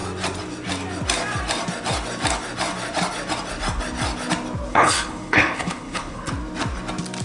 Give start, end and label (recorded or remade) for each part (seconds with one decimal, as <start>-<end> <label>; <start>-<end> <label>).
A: 0.0-4.7 recorded; 4.7-6.3 remade; 6.3-7.2 recorded